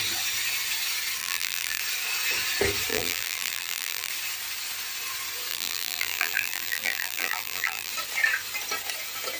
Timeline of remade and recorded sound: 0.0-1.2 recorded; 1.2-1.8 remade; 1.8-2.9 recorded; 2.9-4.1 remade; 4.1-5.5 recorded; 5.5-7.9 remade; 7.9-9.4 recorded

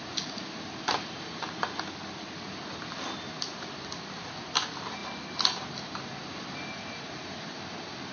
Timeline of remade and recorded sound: 0.0-8.1 recorded

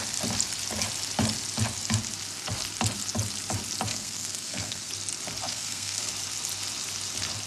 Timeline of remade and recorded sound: 0.0-3.9 recorded; 3.9-4.9 remade; 4.9-5.5 recorded; 5.5-6.1 remade; 6.1-7.5 recorded

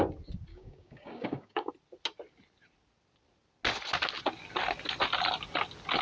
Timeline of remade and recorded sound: 0.0-0.5 recorded; 0.5-1.7 remade; 1.7-6.0 recorded

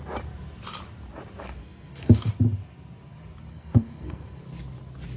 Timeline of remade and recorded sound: 0.0-1.6 recorded; 1.6-2.3 remade; 2.3-3.5 recorded; 3.5-4.4 remade; 4.4-5.2 recorded

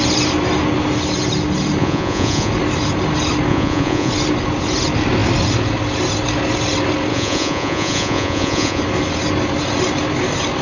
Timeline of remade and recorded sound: 0.0-1.8 recorded; 1.8-2.5 remade; 2.5-3.5 recorded; 3.5-4.1 remade; 4.1-7.1 recorded; 7.1-8.8 remade; 8.8-10.6 recorded

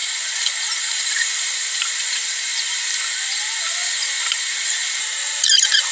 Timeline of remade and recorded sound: 0.0-2.5 remade; 2.5-4.3 recorded; 4.3-5.9 remade